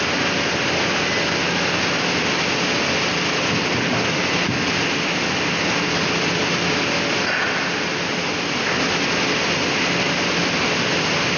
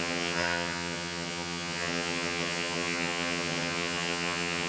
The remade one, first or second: second